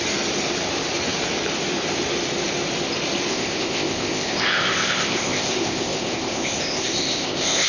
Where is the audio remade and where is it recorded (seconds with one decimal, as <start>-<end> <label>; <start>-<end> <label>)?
0.0-3.3 recorded; 3.3-7.7 remade